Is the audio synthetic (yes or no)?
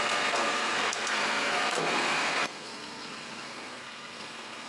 yes